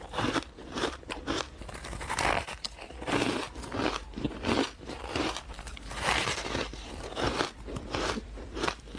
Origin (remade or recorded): remade